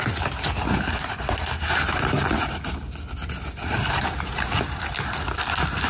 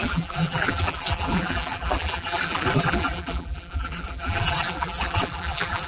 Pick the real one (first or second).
first